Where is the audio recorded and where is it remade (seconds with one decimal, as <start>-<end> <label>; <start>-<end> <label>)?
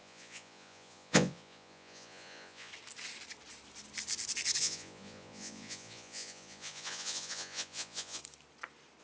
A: 0.0-2.7 remade; 2.7-4.6 recorded; 4.6-8.2 remade; 8.2-9.0 recorded